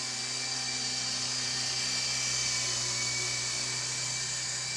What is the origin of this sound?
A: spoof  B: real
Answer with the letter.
B